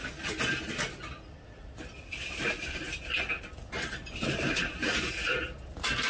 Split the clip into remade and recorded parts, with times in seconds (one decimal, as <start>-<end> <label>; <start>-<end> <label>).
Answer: 0.0-6.1 recorded